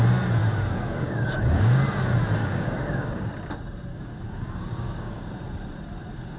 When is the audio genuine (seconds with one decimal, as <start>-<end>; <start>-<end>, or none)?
0.0-0.4; 1.8-2.4; 3.3-3.9; 5.3-6.4

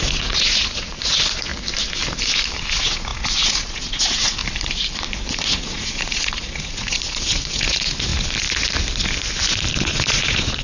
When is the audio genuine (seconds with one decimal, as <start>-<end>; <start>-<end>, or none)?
1.5-2.7; 4.4-5.4; 8.1-9.9

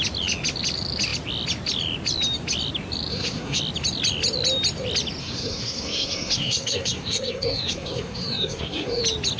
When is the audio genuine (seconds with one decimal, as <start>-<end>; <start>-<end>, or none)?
0.0-3.1; 3.6-5.2; 9.0-9.4

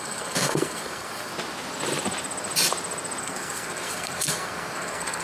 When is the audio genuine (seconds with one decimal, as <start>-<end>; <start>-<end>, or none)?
1.3-3.2

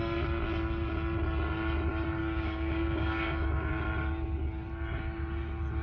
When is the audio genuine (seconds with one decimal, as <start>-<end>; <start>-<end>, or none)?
0.0-2.2; 3.7-5.8

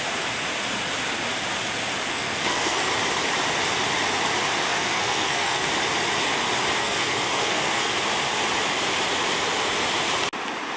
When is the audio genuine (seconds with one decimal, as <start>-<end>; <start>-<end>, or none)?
0.0-2.1; 2.9-4.7; 5.7-6.8; 7.9-10.8

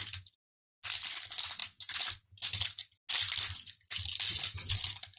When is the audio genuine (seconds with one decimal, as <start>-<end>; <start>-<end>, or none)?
0.0-5.2

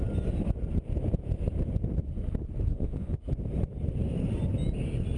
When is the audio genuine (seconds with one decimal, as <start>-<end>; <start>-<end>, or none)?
0.0-2.7; 3.2-5.2